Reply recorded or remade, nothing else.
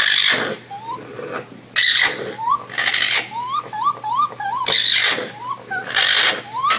recorded